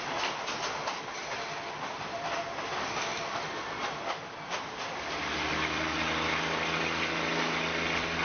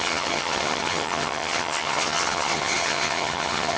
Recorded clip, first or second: first